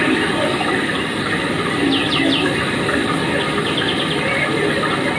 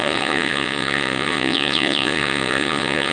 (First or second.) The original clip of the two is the first